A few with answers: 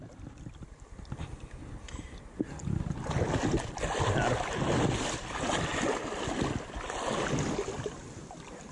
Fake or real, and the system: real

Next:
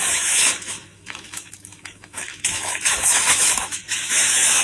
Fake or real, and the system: fake, autoencoder, DAC-VAE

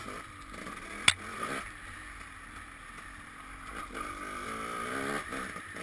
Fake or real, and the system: real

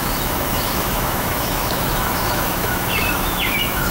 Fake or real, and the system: fake, autoencoder, DAC-VAE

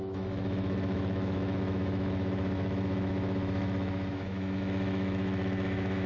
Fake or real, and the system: fake, autoencoder, DAC-VAE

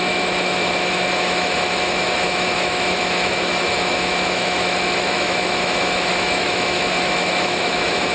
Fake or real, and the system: fake, autoencoder, DAC-VAE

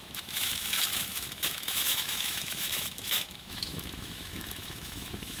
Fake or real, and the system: fake, autoencoder, DAC-VAE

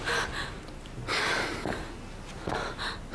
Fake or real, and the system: real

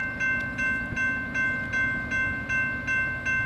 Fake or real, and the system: real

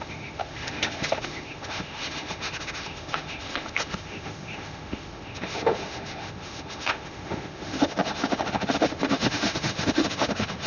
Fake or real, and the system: fake, autoencoder, DAC-VAE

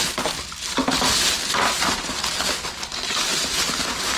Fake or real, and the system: real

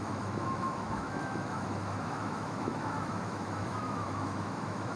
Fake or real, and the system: fake, autoencoder, DAC-VAE